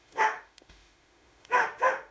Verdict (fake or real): fake